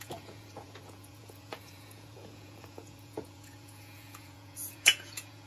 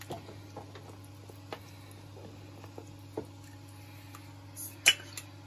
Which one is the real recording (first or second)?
second